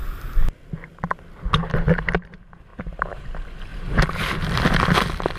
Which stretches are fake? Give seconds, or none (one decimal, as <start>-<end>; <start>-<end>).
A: 2.7-3.2; 3.7-4.8